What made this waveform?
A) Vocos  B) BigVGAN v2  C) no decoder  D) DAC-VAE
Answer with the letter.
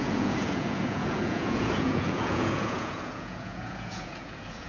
A